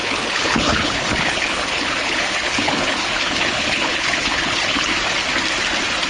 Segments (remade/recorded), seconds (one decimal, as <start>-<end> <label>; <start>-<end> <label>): 0.0-4.9 remade; 4.9-6.1 recorded